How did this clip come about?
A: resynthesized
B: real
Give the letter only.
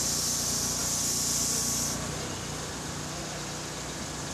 B